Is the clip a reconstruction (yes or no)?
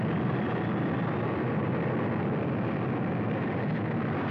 no